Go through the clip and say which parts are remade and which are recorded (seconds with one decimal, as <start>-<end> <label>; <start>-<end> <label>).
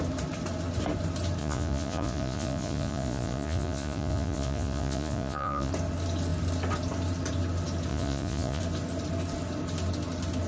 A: 0.0-1.4 recorded; 1.4-5.7 remade; 5.7-7.9 recorded; 7.9-8.6 remade; 8.6-10.5 recorded